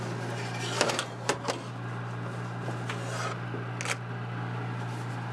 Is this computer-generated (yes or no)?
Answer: no